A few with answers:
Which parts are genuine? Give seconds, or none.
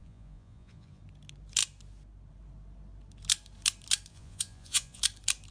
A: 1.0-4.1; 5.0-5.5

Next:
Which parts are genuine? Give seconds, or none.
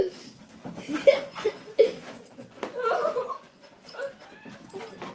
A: 0.0-1.0; 3.6-5.1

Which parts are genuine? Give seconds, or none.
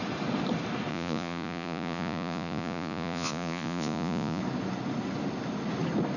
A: 0.0-0.9; 4.4-6.2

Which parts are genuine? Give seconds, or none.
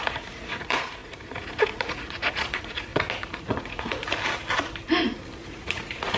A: 2.9-3.4; 4.0-5.4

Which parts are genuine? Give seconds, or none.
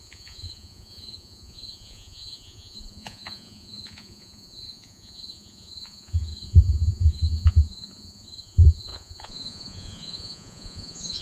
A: none